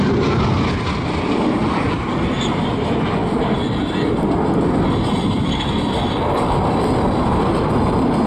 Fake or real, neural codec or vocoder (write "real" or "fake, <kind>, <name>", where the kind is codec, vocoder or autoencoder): real